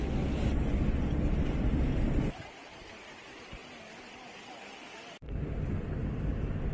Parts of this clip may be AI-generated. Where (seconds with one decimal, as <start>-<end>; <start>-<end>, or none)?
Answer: none